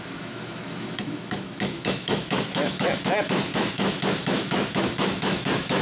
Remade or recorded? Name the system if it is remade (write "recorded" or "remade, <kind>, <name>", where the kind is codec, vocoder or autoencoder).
remade, autoencoder, DAC-VAE